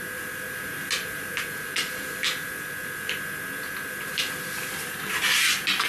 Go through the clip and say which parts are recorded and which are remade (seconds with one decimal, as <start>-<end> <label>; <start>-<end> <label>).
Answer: 0.0-5.9 recorded